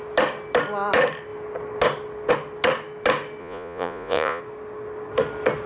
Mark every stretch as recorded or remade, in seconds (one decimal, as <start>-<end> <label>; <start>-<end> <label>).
0.0-3.4 recorded; 3.4-4.4 remade; 4.4-5.7 recorded